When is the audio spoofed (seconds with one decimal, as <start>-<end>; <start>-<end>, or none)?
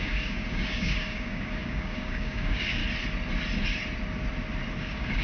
0.0-2.8; 4.8-5.2